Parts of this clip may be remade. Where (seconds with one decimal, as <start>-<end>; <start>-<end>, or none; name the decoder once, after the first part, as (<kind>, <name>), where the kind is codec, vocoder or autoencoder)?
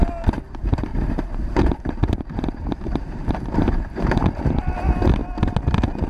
0.9-4.6 (vocoder, BigVGAN v2)